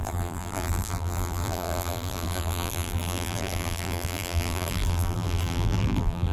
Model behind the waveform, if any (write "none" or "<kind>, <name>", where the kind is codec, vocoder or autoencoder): vocoder, BigVGAN v2